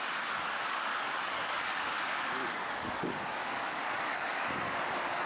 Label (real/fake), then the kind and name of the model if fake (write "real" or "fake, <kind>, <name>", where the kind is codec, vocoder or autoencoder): fake, codec, DAC